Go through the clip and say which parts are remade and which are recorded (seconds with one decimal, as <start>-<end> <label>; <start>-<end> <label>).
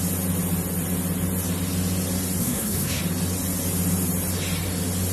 0.0-2.4 recorded; 2.4-3.0 remade; 3.0-5.1 recorded